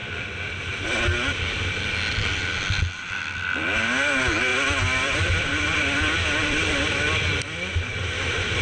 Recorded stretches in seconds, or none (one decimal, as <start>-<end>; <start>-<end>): 0.7-4.5; 6.7-8.6